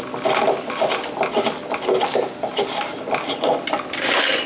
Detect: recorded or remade recorded